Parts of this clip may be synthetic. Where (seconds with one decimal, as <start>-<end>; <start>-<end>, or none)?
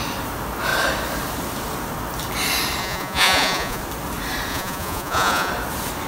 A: 2.8-3.8; 4.5-5.5